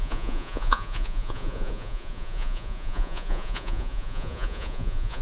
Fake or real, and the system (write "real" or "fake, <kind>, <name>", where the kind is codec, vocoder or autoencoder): fake, vocoder, Vocos